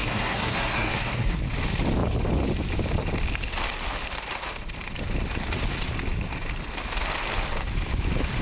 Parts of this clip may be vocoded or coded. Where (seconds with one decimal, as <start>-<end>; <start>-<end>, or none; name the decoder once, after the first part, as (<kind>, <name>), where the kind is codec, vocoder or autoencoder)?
0.0-1.4 (codec, SNAC)